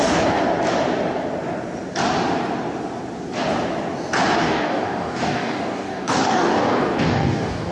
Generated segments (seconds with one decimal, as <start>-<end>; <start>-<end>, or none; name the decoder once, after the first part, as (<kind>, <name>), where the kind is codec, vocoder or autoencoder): 0.0-0.4 (codec, DAC); 4.4-7.7